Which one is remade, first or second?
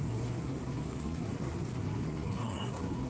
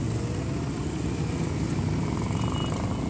first